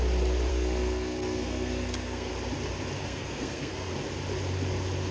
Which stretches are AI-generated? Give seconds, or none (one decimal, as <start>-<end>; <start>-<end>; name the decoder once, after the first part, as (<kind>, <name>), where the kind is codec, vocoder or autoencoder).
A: 0.5-2.3 (codec, SNAC); 3.0-3.9